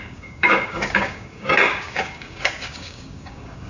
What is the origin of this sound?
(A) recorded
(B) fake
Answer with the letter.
B